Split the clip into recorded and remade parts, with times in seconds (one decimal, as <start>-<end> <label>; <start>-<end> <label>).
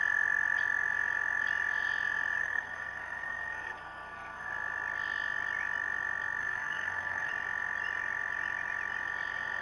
0.0-2.4 recorded; 2.4-4.5 remade; 4.5-6.4 recorded; 6.4-7.3 remade; 7.3-9.6 recorded